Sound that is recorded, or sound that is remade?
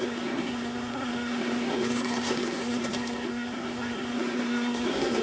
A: remade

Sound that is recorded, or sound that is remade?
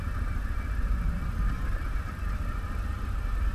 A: recorded